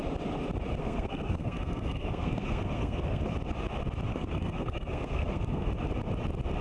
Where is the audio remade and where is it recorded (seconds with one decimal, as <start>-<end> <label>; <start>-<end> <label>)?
0.0-0.8 recorded; 0.8-3.2 remade; 3.2-4.1 recorded; 4.1-5.7 remade; 5.7-6.6 recorded